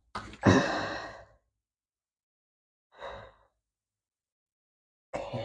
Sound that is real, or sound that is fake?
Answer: real